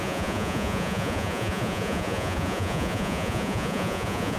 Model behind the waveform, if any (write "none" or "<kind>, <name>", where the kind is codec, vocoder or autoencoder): vocoder, Vocos